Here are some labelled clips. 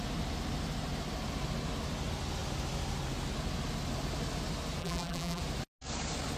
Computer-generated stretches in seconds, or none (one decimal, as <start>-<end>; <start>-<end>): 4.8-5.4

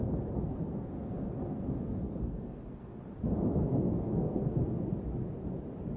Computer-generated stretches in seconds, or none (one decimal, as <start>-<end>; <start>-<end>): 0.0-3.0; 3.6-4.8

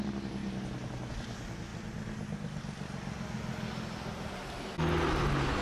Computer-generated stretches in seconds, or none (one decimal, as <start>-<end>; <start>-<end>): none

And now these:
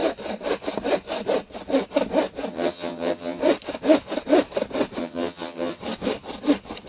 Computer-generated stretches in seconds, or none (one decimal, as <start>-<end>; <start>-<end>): 2.5-3.4; 5.0-5.8

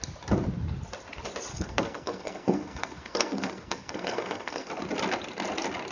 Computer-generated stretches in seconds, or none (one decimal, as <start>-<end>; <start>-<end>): 1.5-4.7

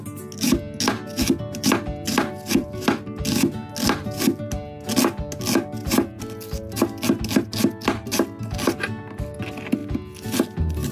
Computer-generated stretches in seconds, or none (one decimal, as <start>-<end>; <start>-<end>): none